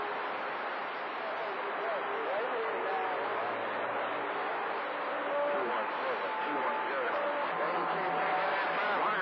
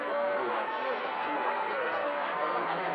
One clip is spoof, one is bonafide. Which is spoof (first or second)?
second